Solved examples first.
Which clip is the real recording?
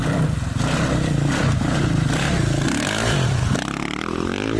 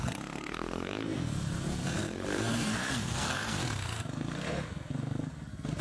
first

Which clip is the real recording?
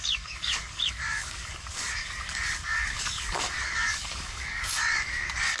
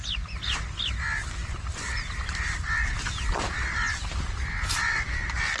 second